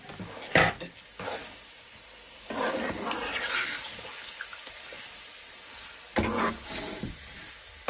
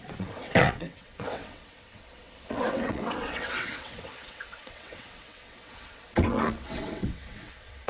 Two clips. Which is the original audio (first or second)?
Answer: first